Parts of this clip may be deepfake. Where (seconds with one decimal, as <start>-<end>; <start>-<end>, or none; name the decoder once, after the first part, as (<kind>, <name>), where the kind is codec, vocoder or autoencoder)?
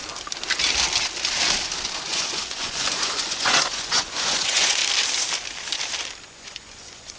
2.1-4.8 (vocoder, Vocos); 6.2-7.2